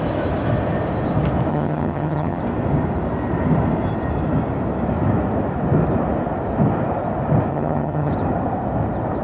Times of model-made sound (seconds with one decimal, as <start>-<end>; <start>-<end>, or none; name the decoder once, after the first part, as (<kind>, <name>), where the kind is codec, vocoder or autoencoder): 1.5-2.4 (vocoder, HiFi-GAN); 7.5-8.1